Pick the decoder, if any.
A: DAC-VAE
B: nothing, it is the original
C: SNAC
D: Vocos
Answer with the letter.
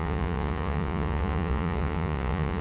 D